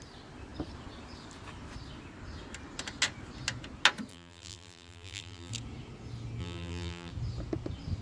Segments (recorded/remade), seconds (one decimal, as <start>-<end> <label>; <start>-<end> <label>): 0.0-4.1 recorded; 4.1-5.5 remade; 5.5-6.4 recorded; 6.4-7.1 remade; 7.1-8.0 recorded